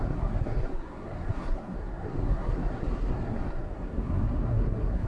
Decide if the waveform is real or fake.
fake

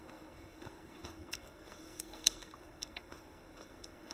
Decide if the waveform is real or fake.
fake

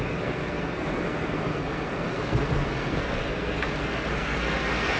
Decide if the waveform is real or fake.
fake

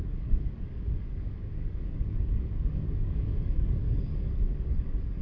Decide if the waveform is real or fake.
fake